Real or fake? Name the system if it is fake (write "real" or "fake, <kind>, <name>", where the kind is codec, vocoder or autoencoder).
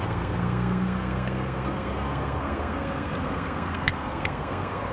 fake, codec, SNAC